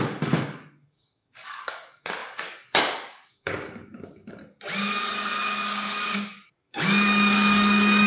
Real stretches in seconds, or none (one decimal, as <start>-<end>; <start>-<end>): 4.4-5.1